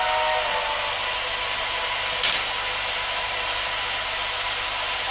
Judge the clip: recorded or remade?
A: recorded